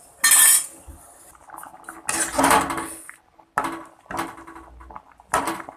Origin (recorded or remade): recorded